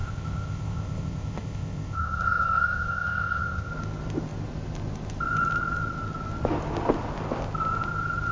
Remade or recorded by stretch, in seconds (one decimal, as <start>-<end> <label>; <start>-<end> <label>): 0.0-3.7 remade; 3.7-8.3 recorded